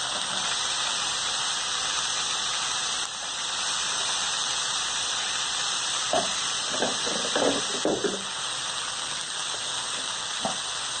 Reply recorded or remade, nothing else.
recorded